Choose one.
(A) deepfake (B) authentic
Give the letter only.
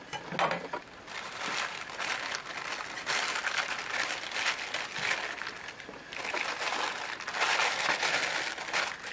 B